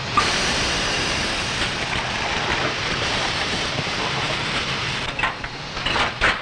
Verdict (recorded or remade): remade